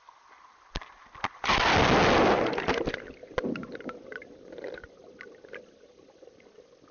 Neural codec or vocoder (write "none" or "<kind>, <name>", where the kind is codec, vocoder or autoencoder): none